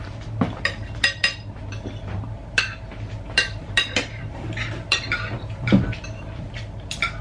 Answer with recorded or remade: remade